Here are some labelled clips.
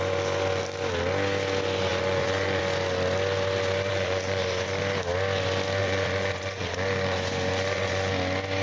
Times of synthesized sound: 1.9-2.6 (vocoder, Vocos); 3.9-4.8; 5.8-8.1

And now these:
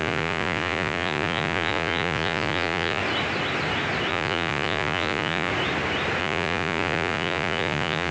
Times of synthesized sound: 0.0-3.0 (vocoder, Vocos); 4.1-5.5; 6.2-8.1

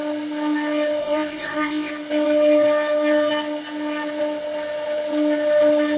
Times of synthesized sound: 1.0-1.9 (codec, ZipCodec)

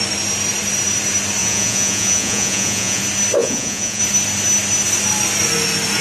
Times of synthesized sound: 1.4-3.0 (vocoder, Vocos); 3.4-4.0

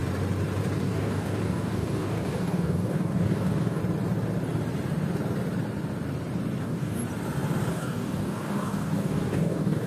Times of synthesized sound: 0.8-3.8 (codec, DAC); 6.6-7.0; 7.7-9.9

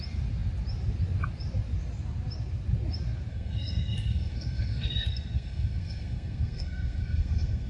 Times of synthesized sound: 3.3-7.7 (codec, SNAC)